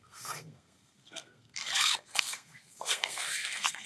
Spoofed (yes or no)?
yes